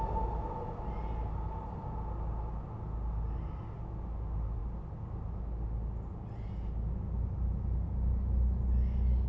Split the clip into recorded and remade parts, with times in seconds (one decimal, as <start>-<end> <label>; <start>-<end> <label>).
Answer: 0.0-9.3 recorded